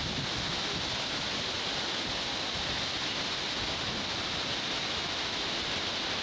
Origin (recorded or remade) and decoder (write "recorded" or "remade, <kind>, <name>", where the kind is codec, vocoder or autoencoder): recorded